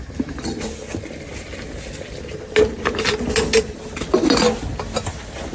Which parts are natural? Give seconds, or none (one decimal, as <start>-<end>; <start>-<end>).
0.0-5.5